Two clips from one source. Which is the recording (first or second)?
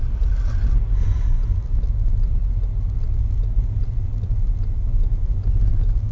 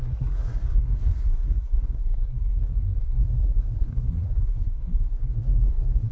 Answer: first